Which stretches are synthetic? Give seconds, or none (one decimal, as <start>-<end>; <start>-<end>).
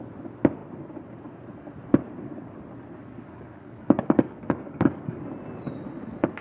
3.0-5.2